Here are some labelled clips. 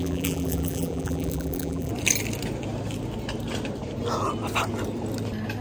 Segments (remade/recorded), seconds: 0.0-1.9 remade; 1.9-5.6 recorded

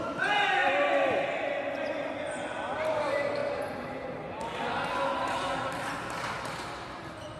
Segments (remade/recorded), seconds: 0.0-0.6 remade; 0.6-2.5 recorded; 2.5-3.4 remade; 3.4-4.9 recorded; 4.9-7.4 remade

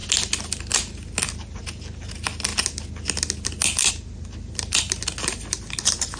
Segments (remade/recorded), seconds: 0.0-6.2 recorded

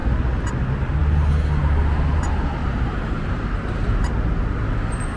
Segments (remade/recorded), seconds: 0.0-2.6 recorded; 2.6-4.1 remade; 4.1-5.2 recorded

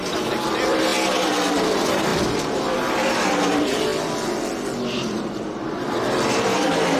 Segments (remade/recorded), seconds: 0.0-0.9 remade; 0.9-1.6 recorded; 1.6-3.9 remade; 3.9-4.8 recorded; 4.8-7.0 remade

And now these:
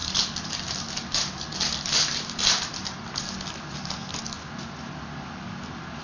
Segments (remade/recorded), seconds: 0.0-3.6 remade; 3.6-6.0 recorded

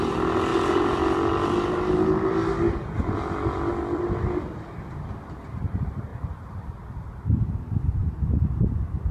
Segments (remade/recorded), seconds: 0.0-8.0 recorded; 8.0-9.1 remade